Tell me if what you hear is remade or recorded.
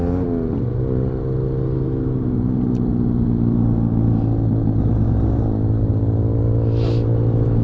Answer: recorded